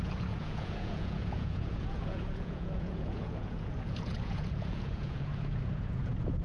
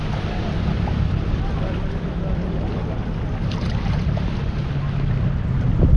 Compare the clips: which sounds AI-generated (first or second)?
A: first